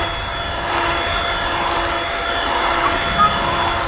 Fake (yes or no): no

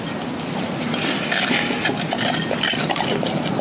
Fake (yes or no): no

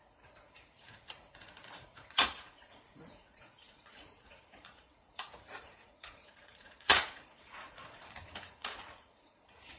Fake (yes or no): yes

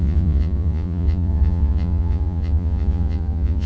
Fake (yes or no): yes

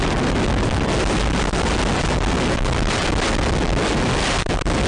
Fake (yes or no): no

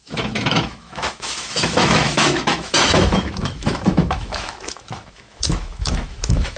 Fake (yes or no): yes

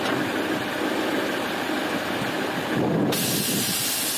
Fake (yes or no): no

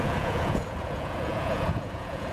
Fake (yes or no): yes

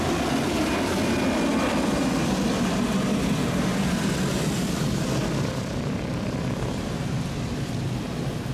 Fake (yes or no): no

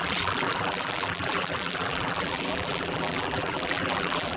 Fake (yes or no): yes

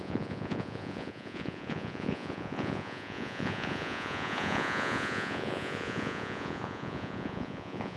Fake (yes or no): yes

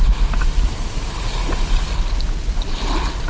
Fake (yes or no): yes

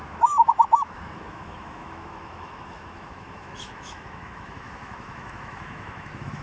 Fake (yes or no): yes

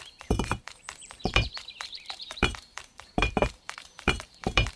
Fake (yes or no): yes